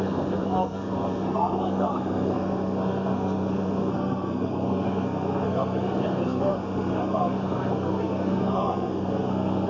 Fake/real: fake